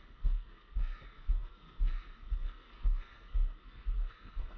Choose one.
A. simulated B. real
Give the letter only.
A